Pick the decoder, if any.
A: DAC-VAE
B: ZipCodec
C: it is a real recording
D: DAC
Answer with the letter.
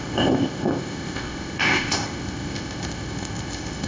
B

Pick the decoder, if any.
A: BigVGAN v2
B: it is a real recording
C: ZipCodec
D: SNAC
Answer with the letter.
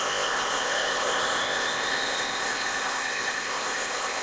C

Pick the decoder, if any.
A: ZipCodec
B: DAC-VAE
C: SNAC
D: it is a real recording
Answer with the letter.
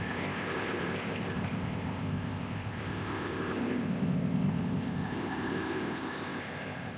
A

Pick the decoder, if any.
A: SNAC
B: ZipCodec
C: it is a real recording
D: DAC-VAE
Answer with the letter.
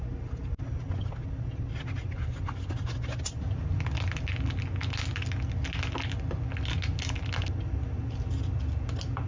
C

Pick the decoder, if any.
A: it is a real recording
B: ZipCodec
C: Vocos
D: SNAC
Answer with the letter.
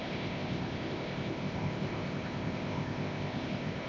B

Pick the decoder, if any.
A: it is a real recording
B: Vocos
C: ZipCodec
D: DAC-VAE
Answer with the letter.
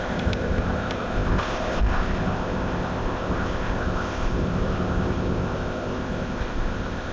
C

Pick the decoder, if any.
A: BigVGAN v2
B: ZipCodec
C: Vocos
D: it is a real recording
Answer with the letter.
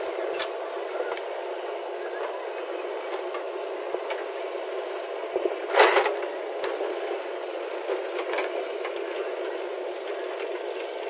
D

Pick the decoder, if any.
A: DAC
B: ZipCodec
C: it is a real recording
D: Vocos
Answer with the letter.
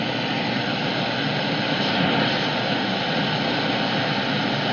C